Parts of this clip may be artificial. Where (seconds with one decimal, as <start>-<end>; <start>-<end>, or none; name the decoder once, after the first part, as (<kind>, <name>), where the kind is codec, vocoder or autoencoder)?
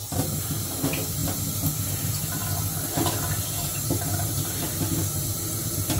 0.0-1.2 (vocoder, BigVGAN v2); 1.8-2.4; 3.4-6.0